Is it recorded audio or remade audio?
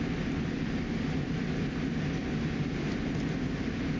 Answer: recorded